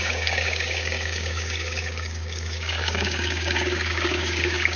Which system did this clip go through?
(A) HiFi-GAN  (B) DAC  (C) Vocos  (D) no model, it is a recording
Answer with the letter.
B